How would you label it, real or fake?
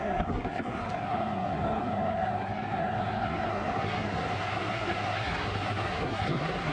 fake